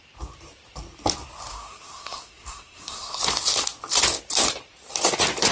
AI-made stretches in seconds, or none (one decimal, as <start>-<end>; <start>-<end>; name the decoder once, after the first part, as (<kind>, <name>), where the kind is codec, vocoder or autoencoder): 1.5-3.2 (codec, SNAC)

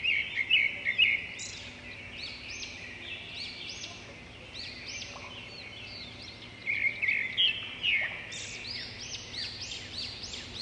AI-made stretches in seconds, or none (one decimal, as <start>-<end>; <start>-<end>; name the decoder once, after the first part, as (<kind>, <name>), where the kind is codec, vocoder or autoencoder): none

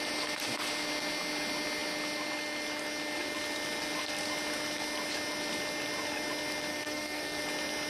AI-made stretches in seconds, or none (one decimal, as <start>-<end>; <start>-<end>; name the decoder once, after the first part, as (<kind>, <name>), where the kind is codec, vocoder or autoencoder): 6.7-7.4 (codec, SNAC)